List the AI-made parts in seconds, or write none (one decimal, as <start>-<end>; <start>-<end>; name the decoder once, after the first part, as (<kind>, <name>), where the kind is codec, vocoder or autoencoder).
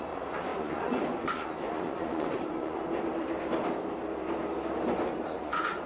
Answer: 0.0-2.8 (vocoder, Vocos); 5.2-5.9